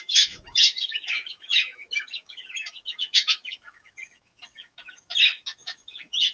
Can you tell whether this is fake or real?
fake